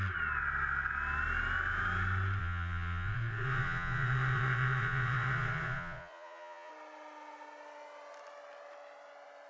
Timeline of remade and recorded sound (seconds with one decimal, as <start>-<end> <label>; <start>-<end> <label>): 0.0-2.4 recorded; 2.4-6.7 remade; 6.7-9.5 recorded